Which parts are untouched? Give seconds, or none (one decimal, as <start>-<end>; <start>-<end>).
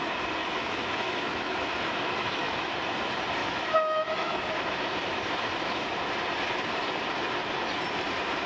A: 0.0-0.4; 2.7-3.4; 4.5-8.5